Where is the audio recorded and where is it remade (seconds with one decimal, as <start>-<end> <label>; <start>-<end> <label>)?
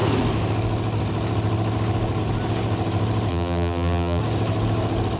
0.0-3.3 recorded; 3.3-4.2 remade; 4.2-5.2 recorded